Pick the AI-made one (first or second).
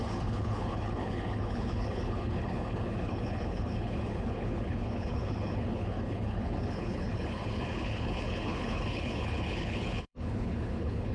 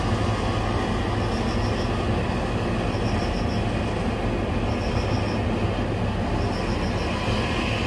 first